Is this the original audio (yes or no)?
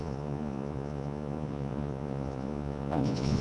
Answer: no